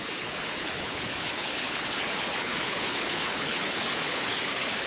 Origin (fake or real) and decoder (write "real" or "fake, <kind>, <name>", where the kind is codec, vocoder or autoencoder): fake, codec, HILCodec